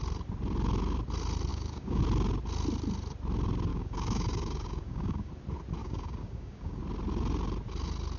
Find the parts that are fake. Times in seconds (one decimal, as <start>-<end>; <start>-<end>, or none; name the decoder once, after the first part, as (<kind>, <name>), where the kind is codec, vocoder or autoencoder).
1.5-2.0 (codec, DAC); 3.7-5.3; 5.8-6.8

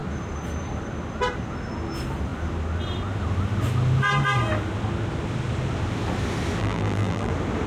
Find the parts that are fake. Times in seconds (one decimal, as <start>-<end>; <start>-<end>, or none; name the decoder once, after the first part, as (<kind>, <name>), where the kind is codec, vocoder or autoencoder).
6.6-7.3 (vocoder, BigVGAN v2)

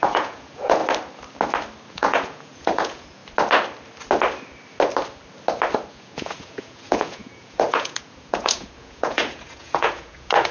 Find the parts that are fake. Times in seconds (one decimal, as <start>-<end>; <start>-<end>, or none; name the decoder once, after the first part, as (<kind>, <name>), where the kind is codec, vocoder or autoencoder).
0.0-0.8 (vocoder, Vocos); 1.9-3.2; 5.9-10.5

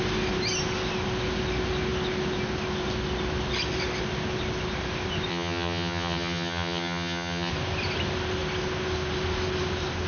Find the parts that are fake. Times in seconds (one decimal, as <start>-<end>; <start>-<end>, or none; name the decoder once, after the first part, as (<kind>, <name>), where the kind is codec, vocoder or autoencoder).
5.3-7.5 (vocoder, HiFi-GAN)

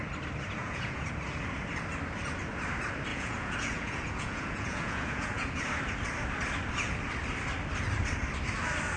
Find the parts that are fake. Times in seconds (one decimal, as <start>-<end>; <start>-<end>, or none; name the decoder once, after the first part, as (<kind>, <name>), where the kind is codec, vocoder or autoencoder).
0.6-1.1 (vocoder, Vocos); 3.1-5.6